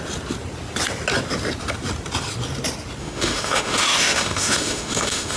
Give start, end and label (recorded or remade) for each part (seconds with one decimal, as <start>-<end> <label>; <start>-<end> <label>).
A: 0.0-3.0 recorded; 3.0-5.4 remade